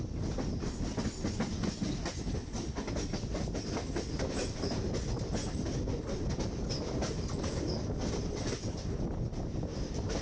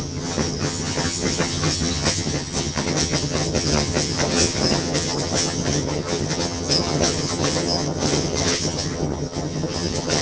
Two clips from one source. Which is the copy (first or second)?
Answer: second